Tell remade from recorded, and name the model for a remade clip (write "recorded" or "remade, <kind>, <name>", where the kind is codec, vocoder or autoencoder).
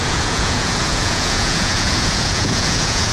remade, vocoder, Vocos